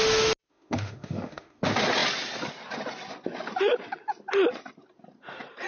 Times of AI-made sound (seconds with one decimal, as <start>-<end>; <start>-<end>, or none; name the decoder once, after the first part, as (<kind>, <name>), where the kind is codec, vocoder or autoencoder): 0.4-1.6 (autoencoder, DAC-VAE)